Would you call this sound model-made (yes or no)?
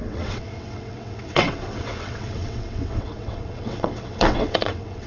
yes